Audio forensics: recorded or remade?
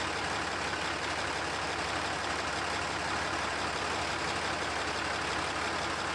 recorded